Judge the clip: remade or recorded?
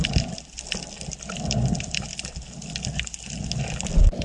recorded